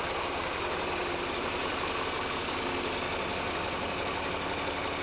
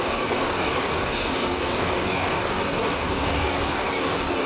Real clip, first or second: first